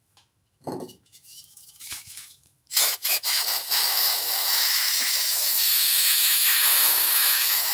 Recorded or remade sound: remade